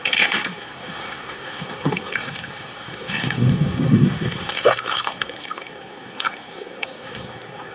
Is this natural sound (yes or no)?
no